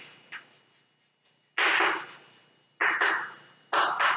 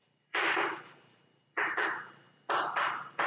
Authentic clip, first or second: first